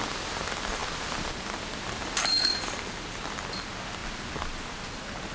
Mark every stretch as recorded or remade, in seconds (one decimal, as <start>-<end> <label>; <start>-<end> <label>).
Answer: 0.0-5.3 recorded